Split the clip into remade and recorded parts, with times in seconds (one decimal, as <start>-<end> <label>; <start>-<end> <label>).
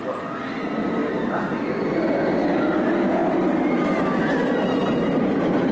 0.0-5.7 recorded